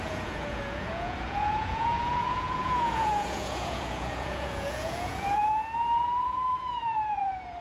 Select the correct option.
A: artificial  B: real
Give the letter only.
A